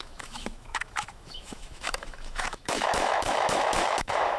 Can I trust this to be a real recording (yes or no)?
no